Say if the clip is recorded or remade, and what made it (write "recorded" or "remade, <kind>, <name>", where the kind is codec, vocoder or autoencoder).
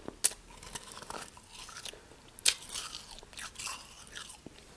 recorded